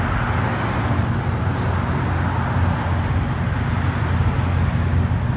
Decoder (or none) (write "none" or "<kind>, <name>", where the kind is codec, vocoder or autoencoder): none